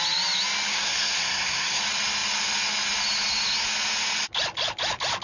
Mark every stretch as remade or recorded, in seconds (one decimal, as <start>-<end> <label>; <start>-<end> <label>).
0.0-0.7 recorded; 0.7-1.8 remade; 1.8-5.2 recorded